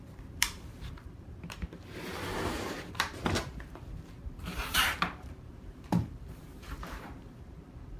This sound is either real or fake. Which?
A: fake